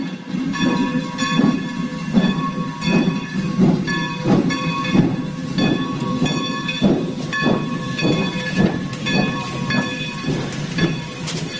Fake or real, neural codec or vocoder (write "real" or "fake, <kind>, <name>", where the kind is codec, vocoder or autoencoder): fake, vocoder, BigVGAN v2